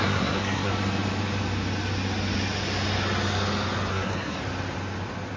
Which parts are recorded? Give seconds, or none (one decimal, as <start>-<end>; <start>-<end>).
0.7-3.9; 4.4-5.4